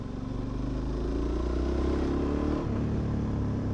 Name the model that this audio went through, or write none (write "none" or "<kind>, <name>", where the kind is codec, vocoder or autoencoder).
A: none